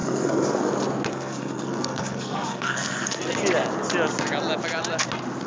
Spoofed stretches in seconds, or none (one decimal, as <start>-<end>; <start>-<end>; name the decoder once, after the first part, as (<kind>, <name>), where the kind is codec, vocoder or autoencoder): 0.0-0.7 (codec, SNAC); 1.1-3.2